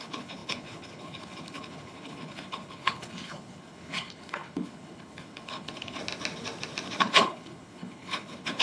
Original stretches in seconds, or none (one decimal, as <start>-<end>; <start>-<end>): 6.0-7.0